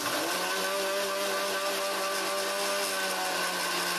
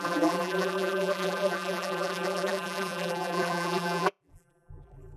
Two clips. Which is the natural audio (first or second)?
first